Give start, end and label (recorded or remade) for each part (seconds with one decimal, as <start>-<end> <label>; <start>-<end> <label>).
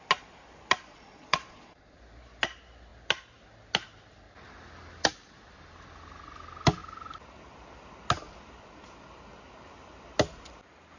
0.0-0.9 recorded; 0.9-2.0 remade; 2.0-11.0 recorded